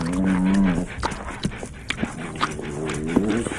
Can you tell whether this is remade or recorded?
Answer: recorded